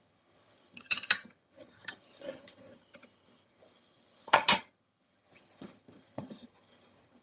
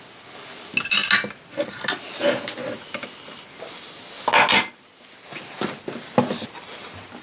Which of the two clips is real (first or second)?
second